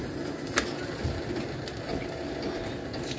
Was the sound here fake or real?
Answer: real